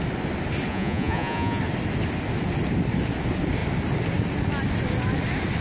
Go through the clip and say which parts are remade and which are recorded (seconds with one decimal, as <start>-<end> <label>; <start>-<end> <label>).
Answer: 0.0-0.7 recorded; 0.7-1.6 remade; 1.6-5.6 recorded